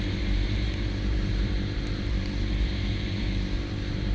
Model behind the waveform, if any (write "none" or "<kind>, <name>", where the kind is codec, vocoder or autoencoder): vocoder, BigVGAN v2